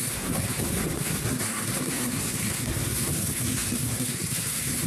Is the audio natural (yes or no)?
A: no